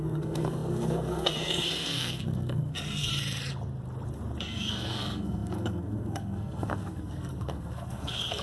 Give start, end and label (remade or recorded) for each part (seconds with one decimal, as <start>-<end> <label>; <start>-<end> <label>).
0.0-3.1 remade; 3.1-4.4 recorded; 4.4-8.4 remade